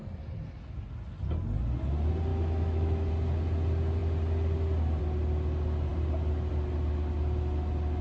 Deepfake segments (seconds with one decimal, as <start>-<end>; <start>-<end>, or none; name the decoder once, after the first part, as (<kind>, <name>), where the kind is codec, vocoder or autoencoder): 2.3-3.1 (autoencoder, DAC-VAE)